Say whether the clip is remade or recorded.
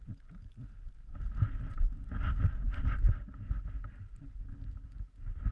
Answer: recorded